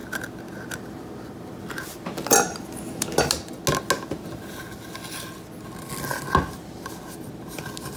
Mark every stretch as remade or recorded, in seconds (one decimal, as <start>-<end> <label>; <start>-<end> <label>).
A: 0.0-8.0 recorded